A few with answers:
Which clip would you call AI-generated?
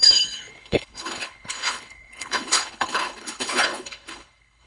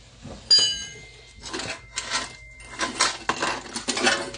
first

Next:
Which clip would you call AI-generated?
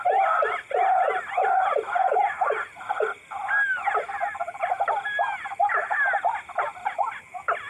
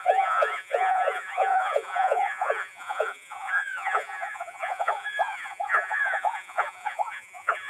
second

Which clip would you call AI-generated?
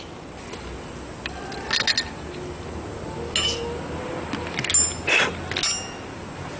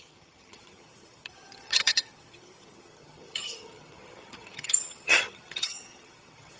second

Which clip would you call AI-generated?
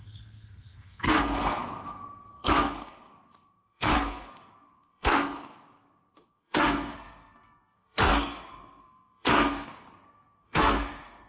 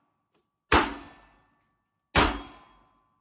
first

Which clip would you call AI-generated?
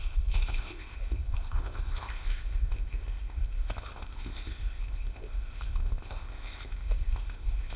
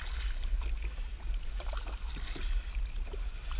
first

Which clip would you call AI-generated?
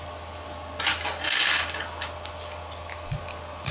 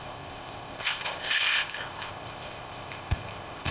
second